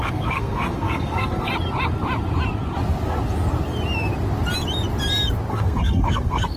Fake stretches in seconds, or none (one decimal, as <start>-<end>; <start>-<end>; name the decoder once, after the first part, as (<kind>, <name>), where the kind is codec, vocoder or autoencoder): 0.0-1.5 (codec, SNAC); 5.5-6.6